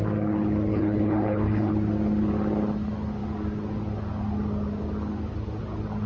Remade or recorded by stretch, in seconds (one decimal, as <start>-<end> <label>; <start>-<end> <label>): 0.0-0.7 recorded; 0.7-1.7 remade; 1.7-6.1 recorded